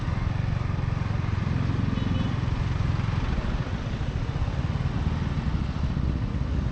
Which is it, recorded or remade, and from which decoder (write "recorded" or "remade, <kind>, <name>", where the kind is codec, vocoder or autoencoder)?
recorded